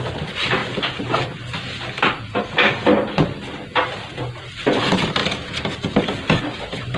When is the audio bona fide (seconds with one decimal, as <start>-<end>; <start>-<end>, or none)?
0.6-4.8; 5.2-6.4